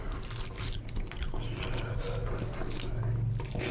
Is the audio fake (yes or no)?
no